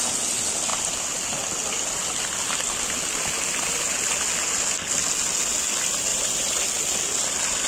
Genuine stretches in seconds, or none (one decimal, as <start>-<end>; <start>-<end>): 0.0-6.1; 6.6-7.7